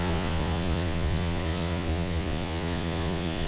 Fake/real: fake